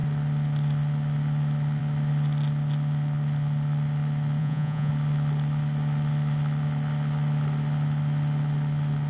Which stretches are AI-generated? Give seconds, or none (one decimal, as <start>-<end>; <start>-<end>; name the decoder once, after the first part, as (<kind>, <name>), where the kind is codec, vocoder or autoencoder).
4.4-4.9 (vocoder, Vocos)